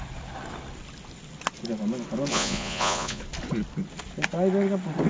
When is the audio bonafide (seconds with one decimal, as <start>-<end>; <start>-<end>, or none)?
0.0-2.3; 3.2-5.1